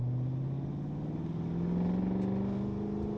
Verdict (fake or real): real